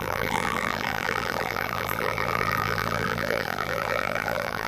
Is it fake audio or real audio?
fake